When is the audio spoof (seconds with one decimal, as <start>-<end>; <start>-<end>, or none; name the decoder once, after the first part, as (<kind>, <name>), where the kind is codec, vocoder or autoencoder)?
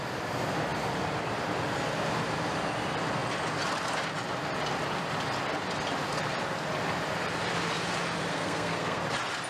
8.3-9.0 (codec, SNAC)